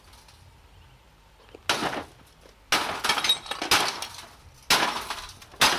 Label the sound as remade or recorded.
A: recorded